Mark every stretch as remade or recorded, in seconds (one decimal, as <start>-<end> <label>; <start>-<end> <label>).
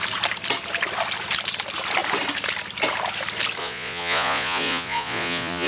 0.0-3.6 recorded; 3.6-5.7 remade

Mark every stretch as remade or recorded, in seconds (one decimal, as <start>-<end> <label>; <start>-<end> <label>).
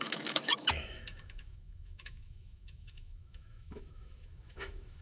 0.0-5.0 remade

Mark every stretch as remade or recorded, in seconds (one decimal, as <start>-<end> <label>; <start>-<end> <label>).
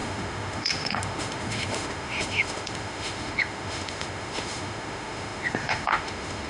0.0-6.5 remade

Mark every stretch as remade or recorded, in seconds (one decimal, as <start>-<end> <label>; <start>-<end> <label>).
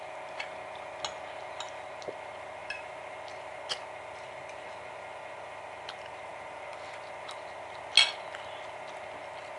0.0-9.6 recorded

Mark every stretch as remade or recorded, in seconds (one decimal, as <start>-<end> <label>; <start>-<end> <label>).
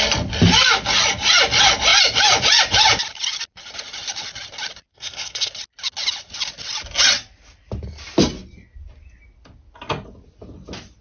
0.0-4.9 recorded; 4.9-5.5 remade; 5.5-11.0 recorded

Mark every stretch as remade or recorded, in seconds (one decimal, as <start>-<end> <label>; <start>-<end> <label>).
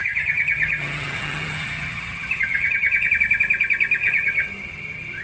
0.0-3.1 remade; 3.1-4.0 recorded; 4.0-5.2 remade